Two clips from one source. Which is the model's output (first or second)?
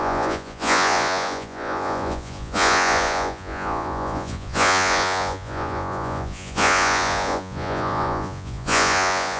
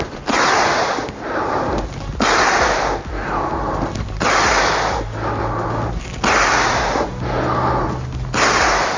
first